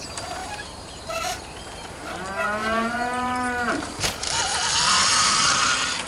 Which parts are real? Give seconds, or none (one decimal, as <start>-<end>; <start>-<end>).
0.0-0.4; 2.2-2.6; 5.6-6.1